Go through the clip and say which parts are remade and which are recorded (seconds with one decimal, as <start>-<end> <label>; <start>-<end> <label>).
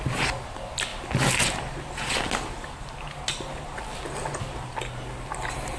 0.0-5.8 recorded